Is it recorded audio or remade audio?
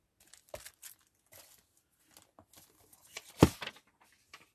recorded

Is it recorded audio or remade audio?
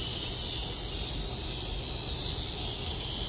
recorded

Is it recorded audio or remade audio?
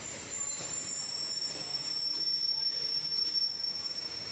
remade